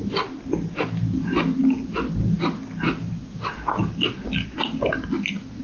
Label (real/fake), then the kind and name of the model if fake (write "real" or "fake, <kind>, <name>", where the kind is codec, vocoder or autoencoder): real